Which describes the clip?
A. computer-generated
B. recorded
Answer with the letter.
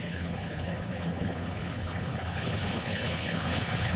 A